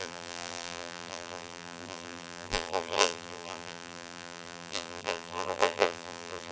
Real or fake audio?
fake